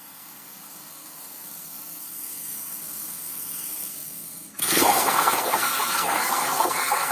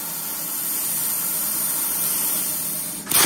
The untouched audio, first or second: second